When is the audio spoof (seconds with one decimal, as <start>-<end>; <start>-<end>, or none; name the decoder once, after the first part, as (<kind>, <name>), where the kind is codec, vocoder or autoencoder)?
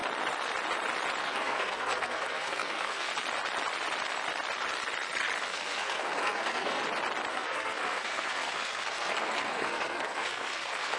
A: 1.2-3.1 (codec, SNAC); 5.4-6.8; 7.3-11.0